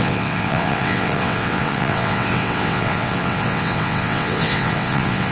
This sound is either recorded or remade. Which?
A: remade